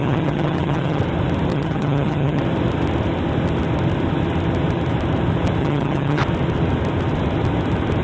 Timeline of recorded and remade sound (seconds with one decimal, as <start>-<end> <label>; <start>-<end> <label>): 0.0-1.0 remade; 1.0-1.5 recorded; 1.5-2.4 remade; 2.4-5.6 recorded; 5.6-6.2 remade; 6.2-8.0 recorded